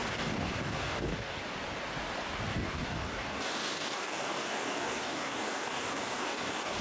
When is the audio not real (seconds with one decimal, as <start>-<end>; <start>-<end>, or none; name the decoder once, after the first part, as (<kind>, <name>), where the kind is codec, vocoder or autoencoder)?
0.0-1.4 (codec, DAC); 2.5-6.8